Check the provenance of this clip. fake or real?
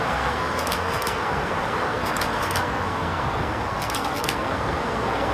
fake